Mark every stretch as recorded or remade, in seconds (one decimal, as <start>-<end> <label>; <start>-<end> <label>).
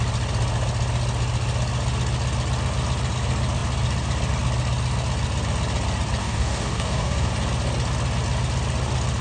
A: 0.0-6.2 recorded; 6.2-7.3 remade; 7.3-9.2 recorded